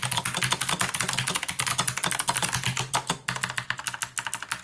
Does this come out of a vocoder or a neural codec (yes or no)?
no